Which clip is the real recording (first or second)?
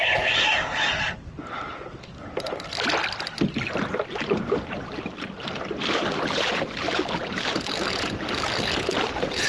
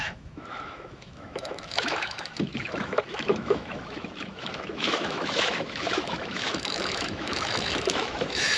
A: first